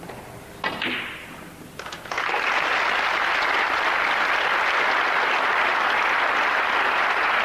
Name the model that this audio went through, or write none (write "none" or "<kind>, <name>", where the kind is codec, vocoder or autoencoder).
none